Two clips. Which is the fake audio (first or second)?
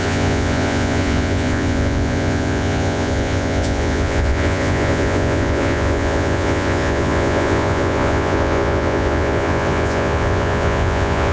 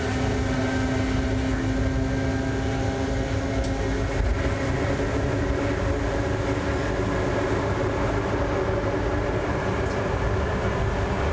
first